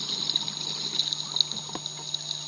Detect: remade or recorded recorded